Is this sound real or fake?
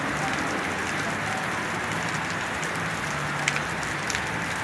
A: real